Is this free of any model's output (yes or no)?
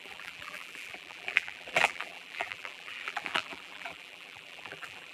no